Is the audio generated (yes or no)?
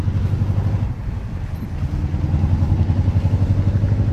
no